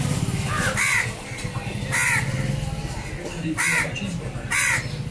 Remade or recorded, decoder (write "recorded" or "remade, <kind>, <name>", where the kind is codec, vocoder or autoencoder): recorded